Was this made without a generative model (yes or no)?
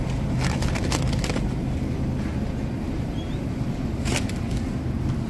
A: yes